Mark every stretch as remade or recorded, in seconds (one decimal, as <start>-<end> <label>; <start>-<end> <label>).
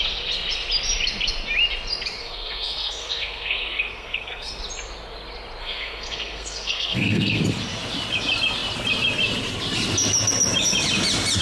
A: 0.0-2.2 recorded; 2.2-4.6 remade; 4.6-5.6 recorded; 5.6-7.4 remade; 7.4-11.4 recorded